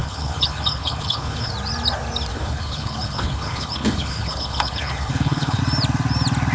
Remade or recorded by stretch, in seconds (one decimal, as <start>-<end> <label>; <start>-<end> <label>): 0.0-1.5 remade; 1.5-2.3 recorded; 2.3-5.6 remade; 5.6-6.5 recorded